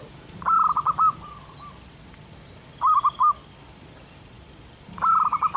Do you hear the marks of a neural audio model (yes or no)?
no